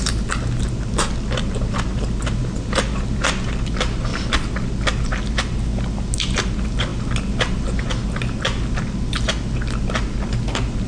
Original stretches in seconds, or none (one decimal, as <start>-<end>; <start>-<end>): 0.0-2.4; 3.5-10.9